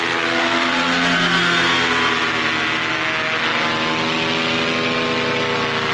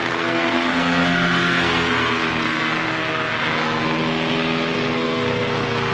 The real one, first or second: first